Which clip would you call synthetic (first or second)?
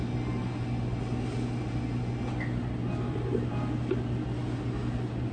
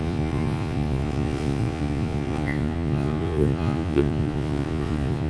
second